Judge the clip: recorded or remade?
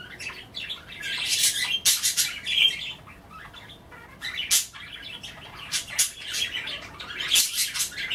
recorded